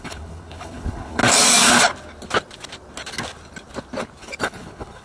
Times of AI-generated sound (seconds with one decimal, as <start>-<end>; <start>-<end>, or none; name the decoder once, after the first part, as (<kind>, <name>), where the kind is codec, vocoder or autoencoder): 0.0-1.2 (codec, HILCodec); 4.2-5.0